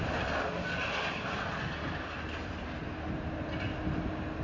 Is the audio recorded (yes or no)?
yes